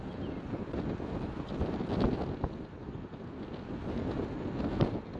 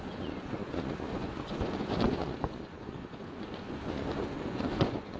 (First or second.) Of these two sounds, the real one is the first